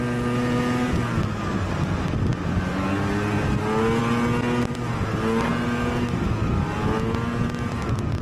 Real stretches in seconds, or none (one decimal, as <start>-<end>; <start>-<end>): 0.0-8.2